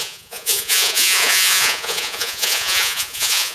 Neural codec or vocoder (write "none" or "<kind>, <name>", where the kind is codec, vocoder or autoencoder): vocoder, Vocos